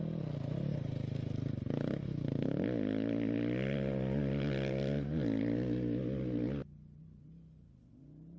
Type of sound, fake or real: real